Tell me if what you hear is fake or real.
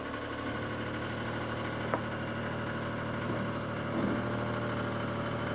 real